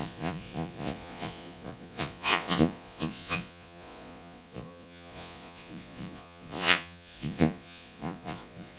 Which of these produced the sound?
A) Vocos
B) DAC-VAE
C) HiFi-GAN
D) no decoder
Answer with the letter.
A